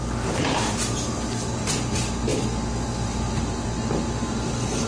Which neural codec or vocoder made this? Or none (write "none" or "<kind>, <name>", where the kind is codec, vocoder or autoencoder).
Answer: none